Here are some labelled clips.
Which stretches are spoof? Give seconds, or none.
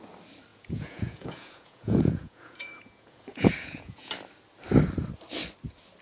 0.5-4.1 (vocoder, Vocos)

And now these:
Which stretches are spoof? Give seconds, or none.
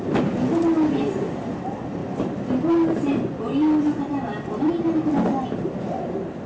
none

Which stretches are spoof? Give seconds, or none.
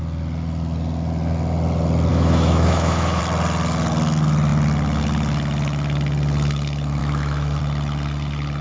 2.1-3.2 (autoencoder, DAC-VAE); 7.0-7.6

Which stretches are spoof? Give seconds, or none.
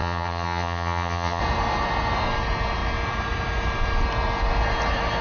0.0-1.4 (vocoder, HiFi-GAN)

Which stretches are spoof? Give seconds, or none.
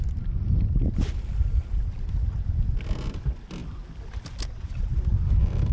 none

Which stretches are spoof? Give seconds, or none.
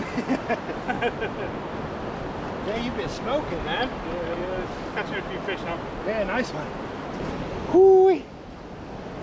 2.9-4.4 (vocoder, BigVGAN v2)